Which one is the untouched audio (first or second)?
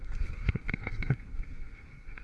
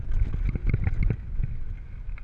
second